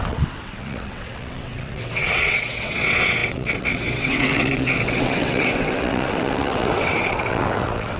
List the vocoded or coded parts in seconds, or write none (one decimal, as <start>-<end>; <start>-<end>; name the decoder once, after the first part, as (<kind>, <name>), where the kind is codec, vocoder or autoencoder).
0.0-8.0 (vocoder, WaveNeXt)